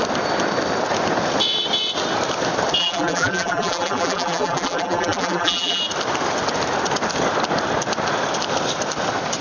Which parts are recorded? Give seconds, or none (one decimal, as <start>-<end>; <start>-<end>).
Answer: 0.0-2.8; 5.8-9.4